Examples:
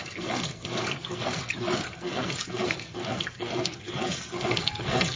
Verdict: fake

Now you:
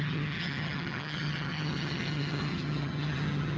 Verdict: fake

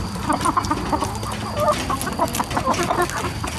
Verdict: real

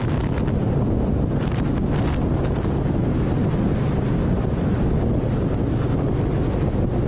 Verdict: real